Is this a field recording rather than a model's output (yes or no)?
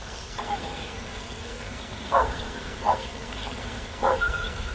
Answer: no